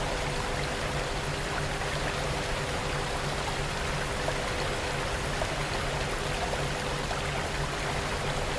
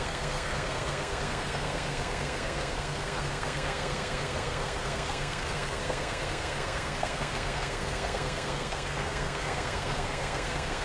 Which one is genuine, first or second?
first